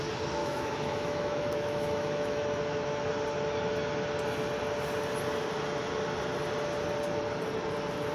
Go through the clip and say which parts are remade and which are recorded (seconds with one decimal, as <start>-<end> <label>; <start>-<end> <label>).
0.0-0.4 recorded; 0.4-3.1 remade; 3.1-8.1 recorded

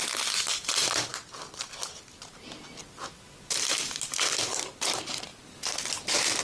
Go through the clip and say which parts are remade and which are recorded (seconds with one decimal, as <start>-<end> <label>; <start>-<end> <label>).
0.0-6.4 recorded

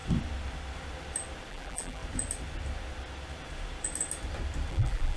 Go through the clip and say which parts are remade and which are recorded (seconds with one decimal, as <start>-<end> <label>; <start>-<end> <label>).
0.0-1.5 recorded; 1.5-2.0 remade; 2.0-4.7 recorded; 4.7-5.2 remade

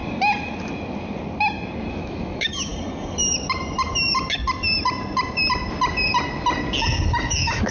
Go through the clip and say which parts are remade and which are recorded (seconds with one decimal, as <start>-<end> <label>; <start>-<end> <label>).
0.0-1.9 recorded; 1.9-2.7 remade; 2.7-7.3 recorded; 7.3-7.7 remade

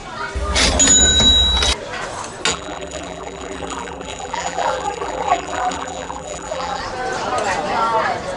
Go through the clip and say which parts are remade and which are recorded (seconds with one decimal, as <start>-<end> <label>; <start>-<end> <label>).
0.0-2.5 recorded; 2.5-6.8 remade; 6.8-8.4 recorded

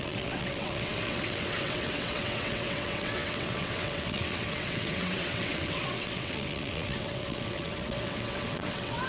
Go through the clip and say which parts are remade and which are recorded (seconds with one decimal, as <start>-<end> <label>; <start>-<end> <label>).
0.0-9.1 remade

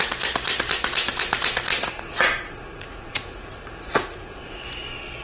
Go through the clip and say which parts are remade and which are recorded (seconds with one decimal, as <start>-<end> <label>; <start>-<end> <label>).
0.0-1.7 recorded; 1.7-4.7 remade; 4.7-5.2 recorded